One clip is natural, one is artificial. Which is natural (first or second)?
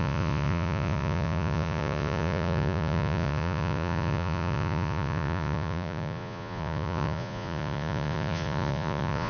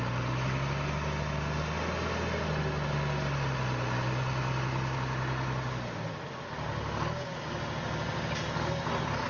second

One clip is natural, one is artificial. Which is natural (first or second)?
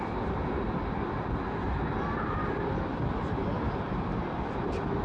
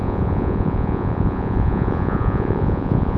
first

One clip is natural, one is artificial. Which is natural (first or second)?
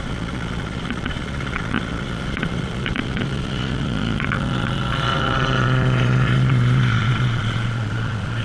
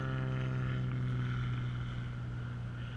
second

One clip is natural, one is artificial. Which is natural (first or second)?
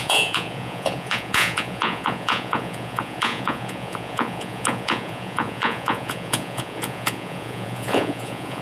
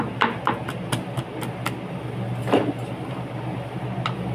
second